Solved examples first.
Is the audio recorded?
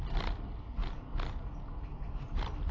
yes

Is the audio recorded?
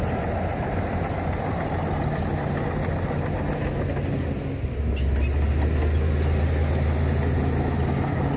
yes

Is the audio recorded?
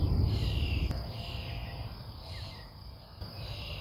yes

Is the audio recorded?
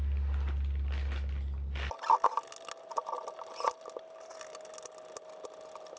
yes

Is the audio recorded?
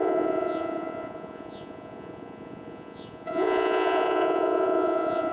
no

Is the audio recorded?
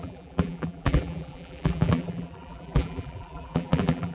no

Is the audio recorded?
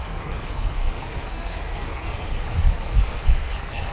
no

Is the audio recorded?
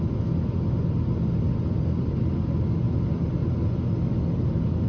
yes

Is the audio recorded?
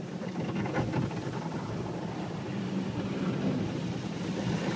yes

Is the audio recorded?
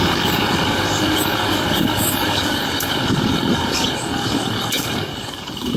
no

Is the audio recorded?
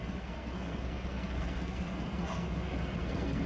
no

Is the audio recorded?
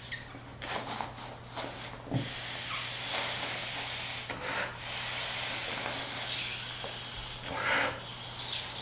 yes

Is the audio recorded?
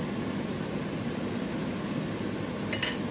yes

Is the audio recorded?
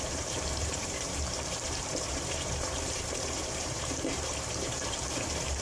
no